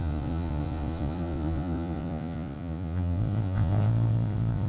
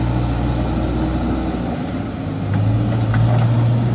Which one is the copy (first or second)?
first